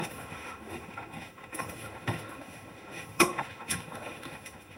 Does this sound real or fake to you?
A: fake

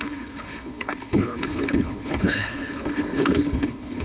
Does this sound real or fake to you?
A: fake